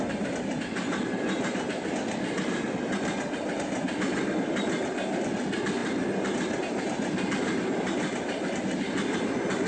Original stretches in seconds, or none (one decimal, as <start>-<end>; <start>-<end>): 0.0-9.7